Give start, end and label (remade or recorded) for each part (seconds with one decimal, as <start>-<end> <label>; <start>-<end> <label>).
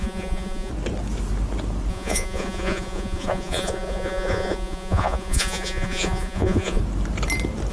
0.0-0.7 remade; 0.7-1.9 recorded; 1.9-6.8 remade; 6.8-7.7 recorded